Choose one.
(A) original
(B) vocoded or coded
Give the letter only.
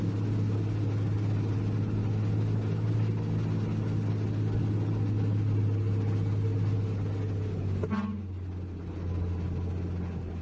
A